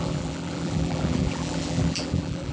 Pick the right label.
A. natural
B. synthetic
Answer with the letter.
B